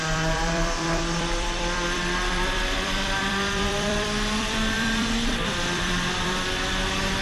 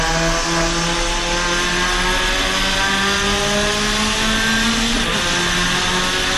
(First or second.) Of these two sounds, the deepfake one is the first